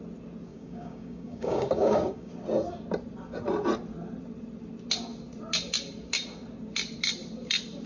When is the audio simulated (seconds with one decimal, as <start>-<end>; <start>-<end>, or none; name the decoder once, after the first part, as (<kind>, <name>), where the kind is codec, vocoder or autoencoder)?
0.5-2.3 (codec, DAC)